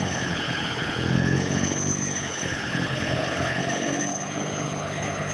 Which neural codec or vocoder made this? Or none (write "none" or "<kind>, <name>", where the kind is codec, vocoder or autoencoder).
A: codec, HILCodec